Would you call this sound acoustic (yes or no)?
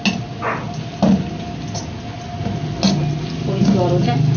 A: yes